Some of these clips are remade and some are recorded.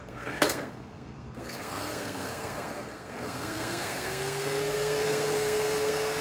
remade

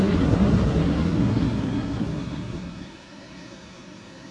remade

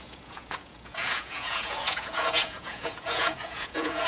remade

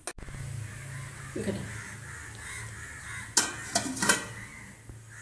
recorded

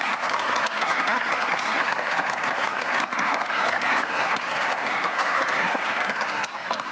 remade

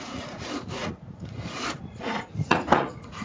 remade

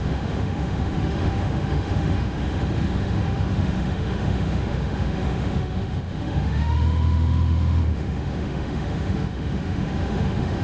remade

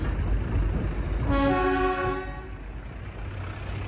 recorded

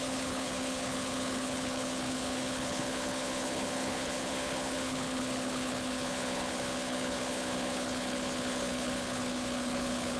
remade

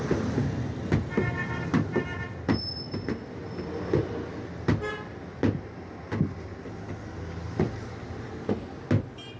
recorded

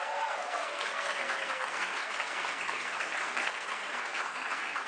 remade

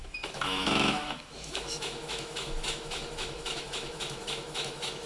remade